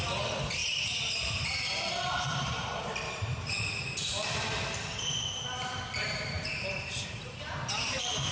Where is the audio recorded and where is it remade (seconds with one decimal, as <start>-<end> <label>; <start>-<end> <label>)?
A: 0.0-4.1 remade; 4.1-5.5 recorded; 5.5-8.3 remade